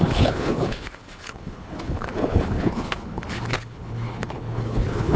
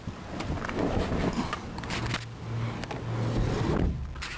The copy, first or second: first